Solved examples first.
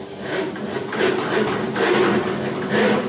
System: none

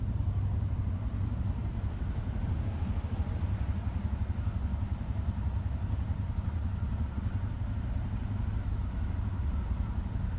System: none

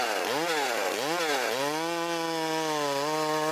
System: none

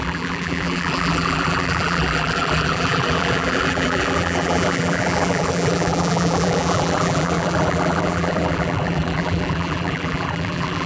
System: vocoder, BigVGAN v2